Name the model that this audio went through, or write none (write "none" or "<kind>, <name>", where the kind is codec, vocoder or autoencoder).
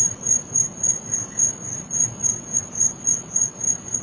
none